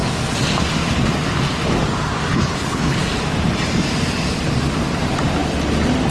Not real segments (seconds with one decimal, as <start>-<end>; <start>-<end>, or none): 2.3-3.0